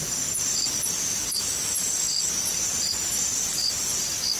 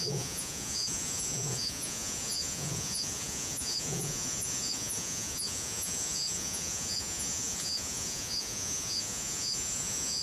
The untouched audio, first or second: first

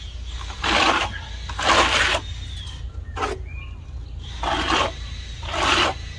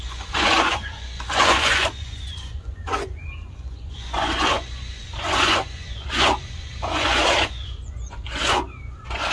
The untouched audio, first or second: first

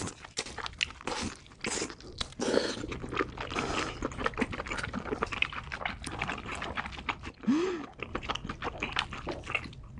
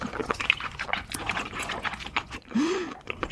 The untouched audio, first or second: first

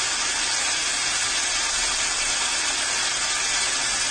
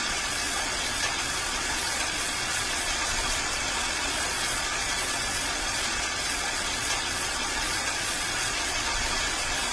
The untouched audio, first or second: first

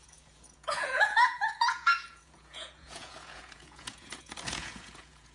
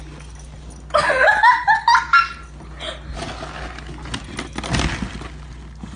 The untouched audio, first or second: second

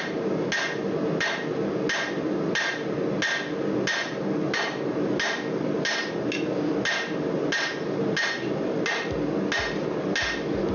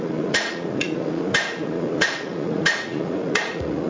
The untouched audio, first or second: first